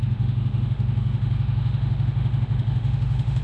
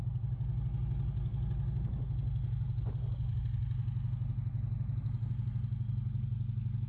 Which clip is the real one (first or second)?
second